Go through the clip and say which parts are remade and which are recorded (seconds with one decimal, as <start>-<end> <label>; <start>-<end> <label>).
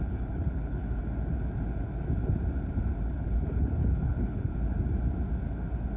0.0-1.0 remade; 1.0-3.1 recorded; 3.1-4.5 remade; 4.5-6.0 recorded